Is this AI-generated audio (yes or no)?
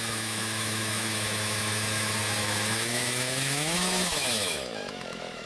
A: yes